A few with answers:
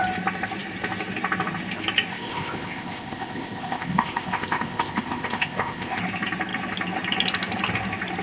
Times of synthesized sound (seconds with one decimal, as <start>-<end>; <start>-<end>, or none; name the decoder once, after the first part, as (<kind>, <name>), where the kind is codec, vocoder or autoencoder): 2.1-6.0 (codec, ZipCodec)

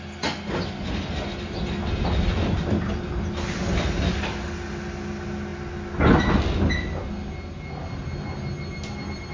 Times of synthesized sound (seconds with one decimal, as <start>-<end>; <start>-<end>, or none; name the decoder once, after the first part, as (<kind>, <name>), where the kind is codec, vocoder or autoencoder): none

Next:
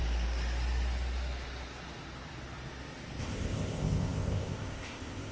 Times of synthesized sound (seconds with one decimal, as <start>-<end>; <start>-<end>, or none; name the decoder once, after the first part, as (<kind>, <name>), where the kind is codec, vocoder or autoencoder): 3.2-5.3 (codec, ZipCodec)